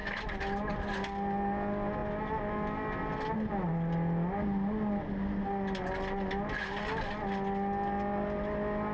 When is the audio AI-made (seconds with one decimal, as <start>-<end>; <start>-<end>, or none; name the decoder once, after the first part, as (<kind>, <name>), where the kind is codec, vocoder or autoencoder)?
none